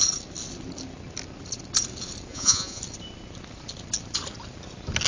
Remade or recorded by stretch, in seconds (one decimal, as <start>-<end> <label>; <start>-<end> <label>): 0.0-2.3 recorded; 2.3-2.8 remade; 2.8-5.1 recorded